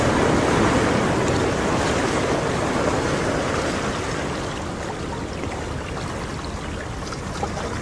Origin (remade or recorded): recorded